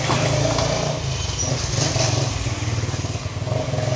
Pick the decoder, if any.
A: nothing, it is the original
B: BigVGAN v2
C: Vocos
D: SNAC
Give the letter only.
A